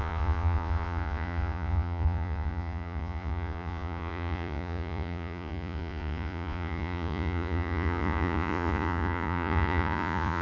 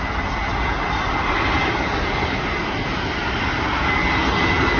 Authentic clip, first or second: second